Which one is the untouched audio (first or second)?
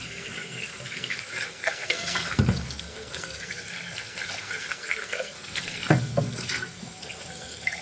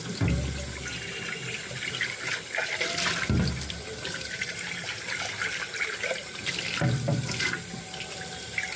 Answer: second